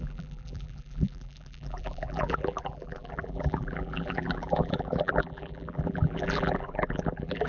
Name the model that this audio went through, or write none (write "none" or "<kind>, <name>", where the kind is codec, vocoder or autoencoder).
vocoder, BigVGAN v2